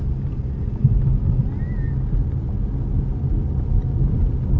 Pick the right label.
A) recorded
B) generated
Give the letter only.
A